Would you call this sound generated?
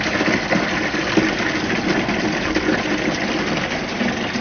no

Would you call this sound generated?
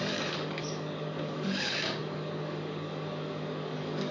yes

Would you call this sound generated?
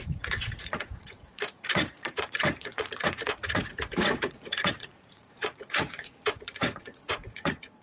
yes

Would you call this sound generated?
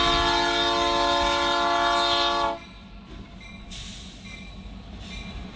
no